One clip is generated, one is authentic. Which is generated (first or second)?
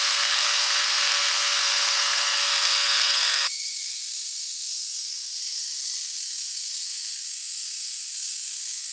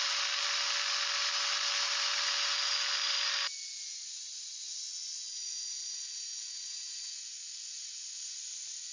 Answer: first